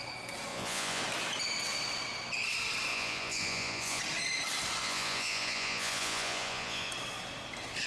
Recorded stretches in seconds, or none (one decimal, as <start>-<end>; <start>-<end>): 0.0-0.5; 1.0-2.9; 4.0-4.8; 6.9-7.9